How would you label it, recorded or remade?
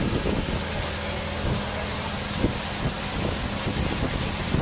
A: recorded